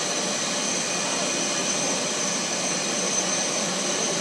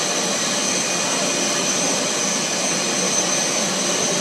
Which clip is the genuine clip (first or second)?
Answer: second